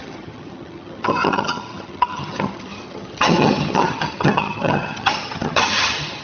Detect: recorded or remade remade